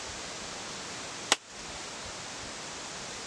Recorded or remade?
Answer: recorded